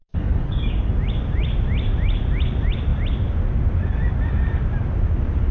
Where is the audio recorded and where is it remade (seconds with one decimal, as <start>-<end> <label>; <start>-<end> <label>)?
0.0-0.9 remade; 0.9-5.5 recorded